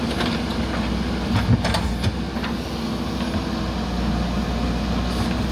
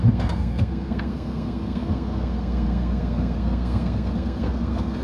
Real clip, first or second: first